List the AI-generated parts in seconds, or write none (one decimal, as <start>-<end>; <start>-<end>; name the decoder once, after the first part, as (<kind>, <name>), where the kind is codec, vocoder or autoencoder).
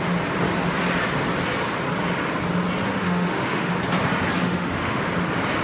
2.9-3.7 (autoencoder, DAC-VAE); 4.4-5.0